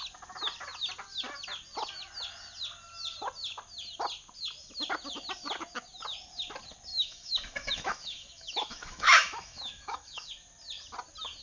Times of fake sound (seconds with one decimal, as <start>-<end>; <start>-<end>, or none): 6.9-10.3